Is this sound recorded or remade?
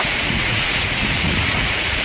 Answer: remade